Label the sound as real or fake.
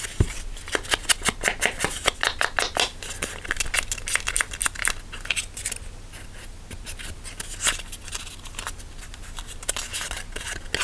real